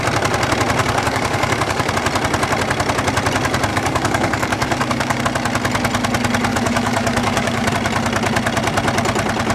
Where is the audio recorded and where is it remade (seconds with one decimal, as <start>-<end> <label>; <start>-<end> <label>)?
0.0-0.8 recorded; 0.8-1.9 remade; 1.9-3.7 recorded; 3.7-5.2 remade; 5.2-6.5 recorded; 6.5-7.7 remade; 7.7-9.5 recorded